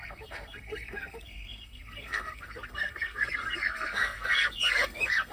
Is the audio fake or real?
fake